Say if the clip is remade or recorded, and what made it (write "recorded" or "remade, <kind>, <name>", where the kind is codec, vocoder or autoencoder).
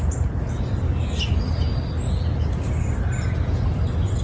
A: recorded